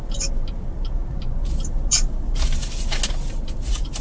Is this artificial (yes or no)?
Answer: no